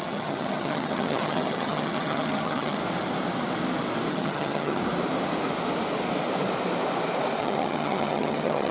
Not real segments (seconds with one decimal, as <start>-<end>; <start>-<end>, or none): 0.0-2.8; 4.1-4.8; 7.4-8.7